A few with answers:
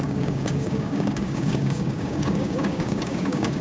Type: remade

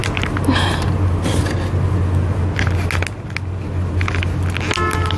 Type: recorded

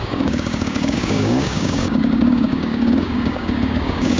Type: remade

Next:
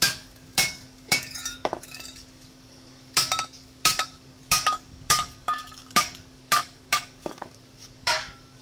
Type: remade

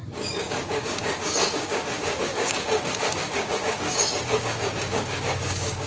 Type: remade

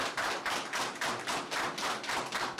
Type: recorded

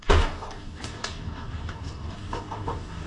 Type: remade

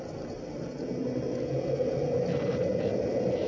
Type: recorded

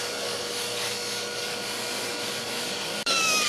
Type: remade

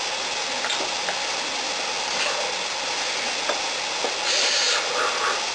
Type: recorded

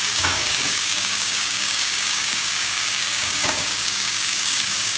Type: remade